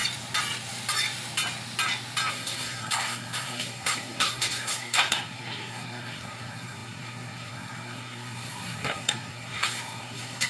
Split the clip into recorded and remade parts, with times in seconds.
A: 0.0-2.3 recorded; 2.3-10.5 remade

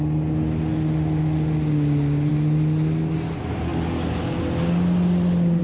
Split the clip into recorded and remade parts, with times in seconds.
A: 0.0-5.6 recorded

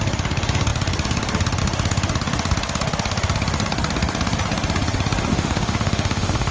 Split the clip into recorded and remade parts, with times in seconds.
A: 0.0-5.3 recorded; 5.3-6.5 remade